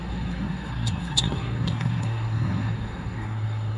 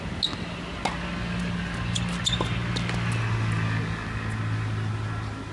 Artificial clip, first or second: first